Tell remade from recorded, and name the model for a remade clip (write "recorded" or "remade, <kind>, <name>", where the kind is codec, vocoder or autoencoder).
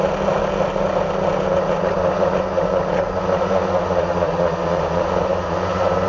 recorded